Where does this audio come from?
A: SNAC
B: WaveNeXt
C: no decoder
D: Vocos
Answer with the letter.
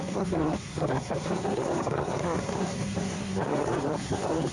A